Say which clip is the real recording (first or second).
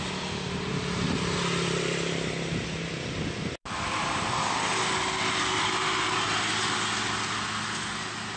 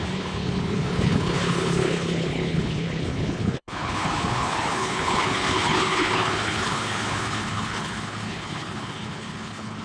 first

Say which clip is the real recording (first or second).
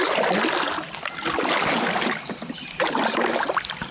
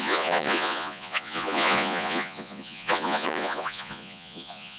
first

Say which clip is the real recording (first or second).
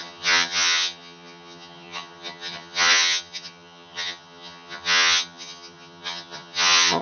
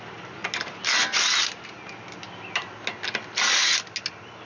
second